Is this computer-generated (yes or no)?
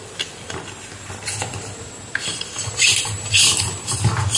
no